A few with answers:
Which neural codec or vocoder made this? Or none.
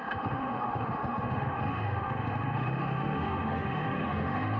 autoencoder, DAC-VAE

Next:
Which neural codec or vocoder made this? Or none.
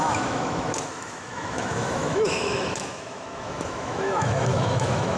autoencoder, DAC-VAE